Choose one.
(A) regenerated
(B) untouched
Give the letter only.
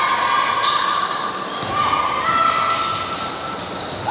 B